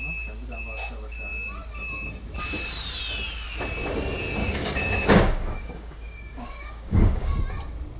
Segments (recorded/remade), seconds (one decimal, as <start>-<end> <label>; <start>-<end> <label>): 0.0-4.4 recorded; 4.4-7.4 remade; 7.4-8.0 recorded